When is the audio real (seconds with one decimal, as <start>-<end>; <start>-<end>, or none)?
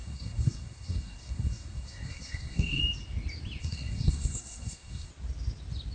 2.8-3.6; 5.1-5.9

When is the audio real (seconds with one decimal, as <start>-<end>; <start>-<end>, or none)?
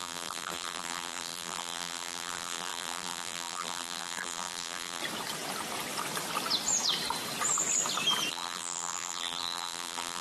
5.0-8.3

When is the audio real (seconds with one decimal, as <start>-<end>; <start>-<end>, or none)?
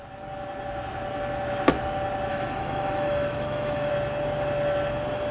0.0-2.3; 3.9-5.3